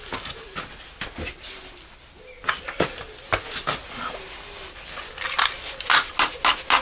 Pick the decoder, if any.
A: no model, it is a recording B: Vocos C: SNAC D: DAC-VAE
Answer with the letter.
A